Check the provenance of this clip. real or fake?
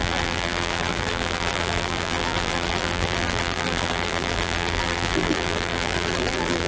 fake